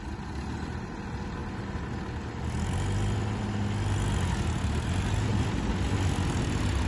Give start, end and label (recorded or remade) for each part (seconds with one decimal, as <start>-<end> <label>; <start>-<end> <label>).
0.0-6.9 recorded

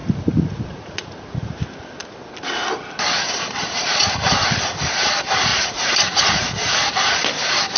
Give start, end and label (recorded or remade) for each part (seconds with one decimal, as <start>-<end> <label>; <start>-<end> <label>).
0.0-1.5 remade; 1.5-5.5 recorded; 5.5-6.9 remade; 6.9-7.8 recorded